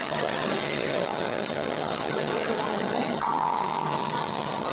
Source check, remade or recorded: remade